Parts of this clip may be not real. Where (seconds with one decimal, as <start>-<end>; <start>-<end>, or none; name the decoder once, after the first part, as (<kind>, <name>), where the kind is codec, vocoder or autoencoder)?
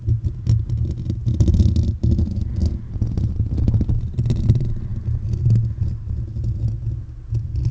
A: none